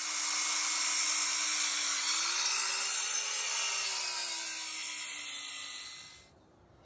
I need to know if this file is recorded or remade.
recorded